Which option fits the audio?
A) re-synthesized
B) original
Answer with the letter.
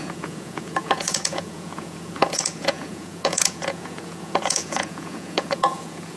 A